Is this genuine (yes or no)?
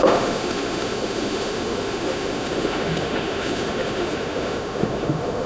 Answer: no